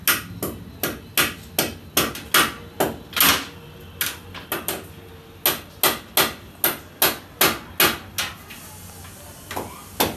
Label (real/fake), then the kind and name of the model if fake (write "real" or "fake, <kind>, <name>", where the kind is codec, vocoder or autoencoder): real